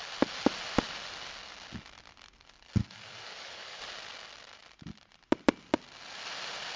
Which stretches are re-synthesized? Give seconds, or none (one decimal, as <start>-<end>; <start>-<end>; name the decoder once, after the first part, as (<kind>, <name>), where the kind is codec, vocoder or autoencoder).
2.8-3.8 (codec, DAC)